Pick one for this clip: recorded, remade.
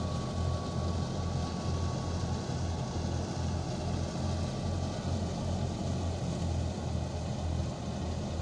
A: recorded